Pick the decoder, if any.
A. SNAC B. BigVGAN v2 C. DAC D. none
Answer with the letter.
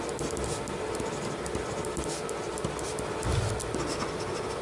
D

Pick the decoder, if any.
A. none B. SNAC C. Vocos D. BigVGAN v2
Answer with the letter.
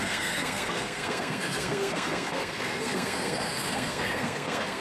B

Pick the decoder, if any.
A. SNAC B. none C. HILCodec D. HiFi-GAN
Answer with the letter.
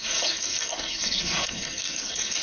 A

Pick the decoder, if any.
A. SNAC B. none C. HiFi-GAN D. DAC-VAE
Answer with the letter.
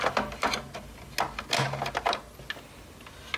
B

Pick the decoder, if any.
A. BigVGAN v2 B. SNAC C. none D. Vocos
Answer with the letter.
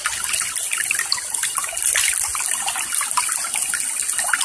C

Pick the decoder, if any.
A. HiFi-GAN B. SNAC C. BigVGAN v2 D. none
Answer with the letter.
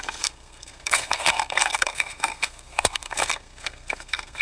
B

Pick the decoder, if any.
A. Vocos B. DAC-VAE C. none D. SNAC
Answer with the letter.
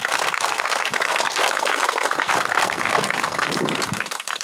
D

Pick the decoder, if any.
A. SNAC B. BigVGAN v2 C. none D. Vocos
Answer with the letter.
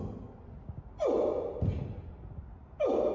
C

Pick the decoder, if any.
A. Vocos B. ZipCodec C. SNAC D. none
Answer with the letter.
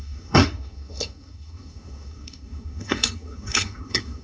C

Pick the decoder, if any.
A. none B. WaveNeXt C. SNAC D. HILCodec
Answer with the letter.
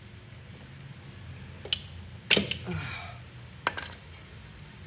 A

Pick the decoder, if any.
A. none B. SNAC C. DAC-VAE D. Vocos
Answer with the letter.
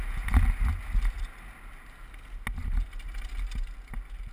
A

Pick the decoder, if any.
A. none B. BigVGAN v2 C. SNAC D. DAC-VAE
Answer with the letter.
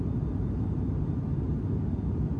A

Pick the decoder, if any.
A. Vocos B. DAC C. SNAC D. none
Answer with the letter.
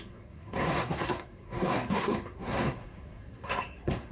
C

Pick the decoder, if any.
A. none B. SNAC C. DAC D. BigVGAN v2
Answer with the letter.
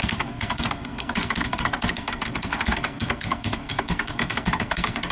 B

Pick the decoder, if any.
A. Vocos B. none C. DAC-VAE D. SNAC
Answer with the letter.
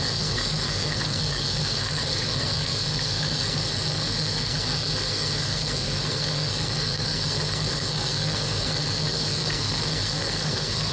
D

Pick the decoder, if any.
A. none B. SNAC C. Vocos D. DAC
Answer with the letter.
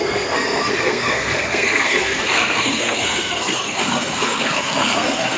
B